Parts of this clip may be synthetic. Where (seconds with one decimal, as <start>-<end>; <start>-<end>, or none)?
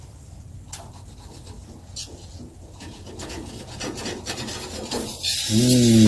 1.6-4.2